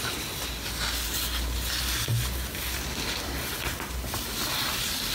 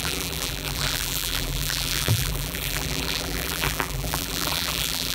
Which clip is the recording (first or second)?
first